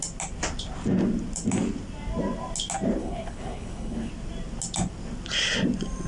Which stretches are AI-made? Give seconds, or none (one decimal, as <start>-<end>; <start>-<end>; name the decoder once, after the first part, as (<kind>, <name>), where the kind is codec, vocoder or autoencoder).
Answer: 3.0-4.1 (codec, HILCodec)